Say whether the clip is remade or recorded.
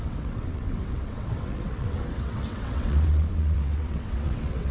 remade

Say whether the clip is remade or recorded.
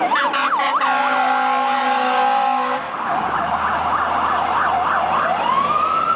recorded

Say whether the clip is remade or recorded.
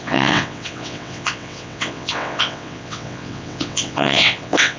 remade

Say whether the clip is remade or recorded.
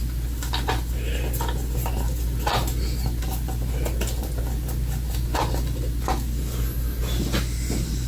recorded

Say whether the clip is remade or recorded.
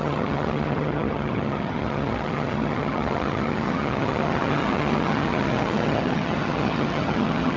remade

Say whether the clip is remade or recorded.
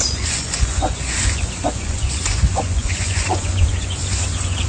remade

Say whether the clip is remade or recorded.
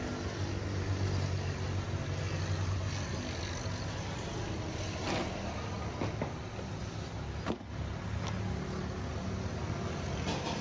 recorded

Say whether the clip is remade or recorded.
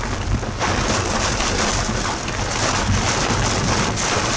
recorded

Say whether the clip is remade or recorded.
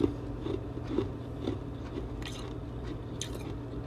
recorded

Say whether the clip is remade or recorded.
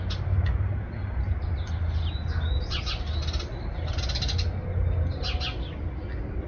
recorded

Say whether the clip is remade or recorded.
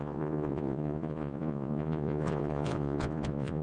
remade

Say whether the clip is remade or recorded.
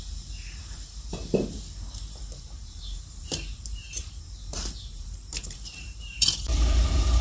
remade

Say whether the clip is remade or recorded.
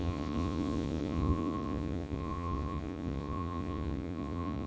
remade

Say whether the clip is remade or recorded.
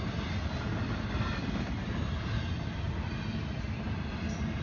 recorded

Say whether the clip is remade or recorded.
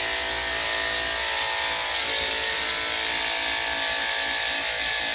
recorded